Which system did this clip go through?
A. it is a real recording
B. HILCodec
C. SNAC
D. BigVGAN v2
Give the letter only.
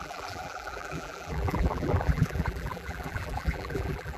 D